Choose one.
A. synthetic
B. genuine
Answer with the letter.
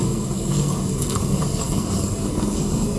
A